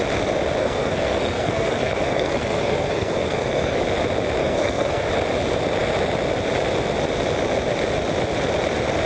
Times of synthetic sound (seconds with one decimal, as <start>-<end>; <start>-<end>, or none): 0.6-3.8; 4.4-5.1